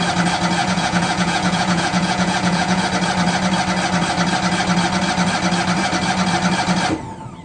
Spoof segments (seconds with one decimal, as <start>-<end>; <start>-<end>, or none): 0.6-2.8